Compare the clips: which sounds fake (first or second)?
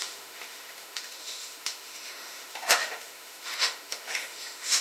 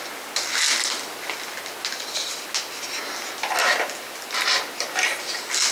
first